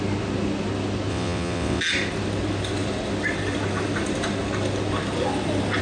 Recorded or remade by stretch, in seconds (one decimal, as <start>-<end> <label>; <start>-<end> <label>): 0.0-1.1 recorded; 1.1-1.8 remade; 1.8-5.8 recorded